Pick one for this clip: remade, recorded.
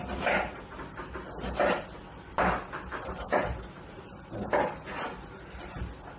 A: recorded